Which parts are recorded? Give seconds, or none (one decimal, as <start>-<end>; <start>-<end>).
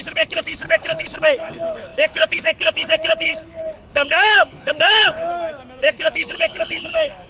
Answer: 5.3-5.8